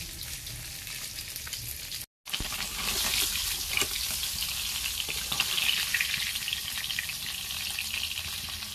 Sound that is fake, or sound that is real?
real